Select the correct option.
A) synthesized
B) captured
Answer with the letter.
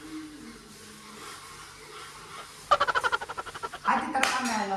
B